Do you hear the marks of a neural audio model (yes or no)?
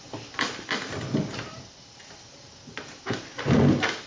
no